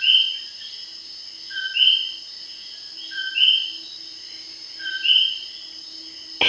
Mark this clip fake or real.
real